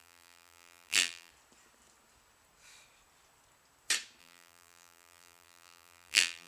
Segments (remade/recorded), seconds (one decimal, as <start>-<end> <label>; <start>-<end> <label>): 0.0-1.3 remade; 1.3-4.2 recorded; 4.2-6.5 remade